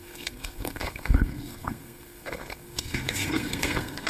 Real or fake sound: fake